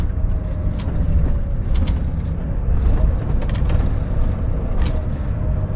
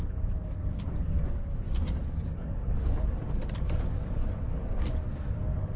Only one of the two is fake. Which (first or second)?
second